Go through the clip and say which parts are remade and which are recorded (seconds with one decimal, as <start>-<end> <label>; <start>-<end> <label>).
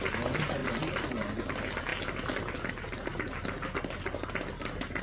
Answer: 0.0-5.0 recorded